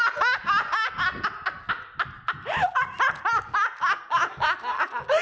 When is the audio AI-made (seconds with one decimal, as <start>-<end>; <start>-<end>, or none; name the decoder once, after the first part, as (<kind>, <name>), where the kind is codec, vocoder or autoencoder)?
none